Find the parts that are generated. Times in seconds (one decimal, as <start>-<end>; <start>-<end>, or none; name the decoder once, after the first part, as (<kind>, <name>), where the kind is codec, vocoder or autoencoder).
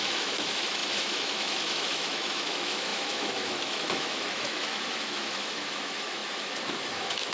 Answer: 0.0-7.3 (autoencoder, DAC-VAE)